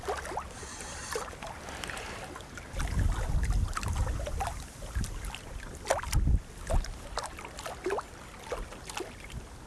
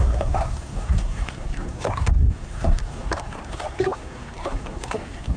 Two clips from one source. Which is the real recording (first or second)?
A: first